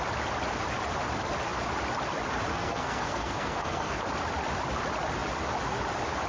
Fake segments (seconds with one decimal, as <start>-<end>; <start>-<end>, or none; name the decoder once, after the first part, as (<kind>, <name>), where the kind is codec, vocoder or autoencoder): 2.5-4.0 (codec, SNAC)